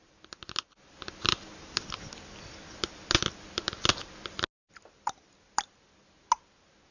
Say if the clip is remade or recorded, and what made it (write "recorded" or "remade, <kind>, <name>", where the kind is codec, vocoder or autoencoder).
recorded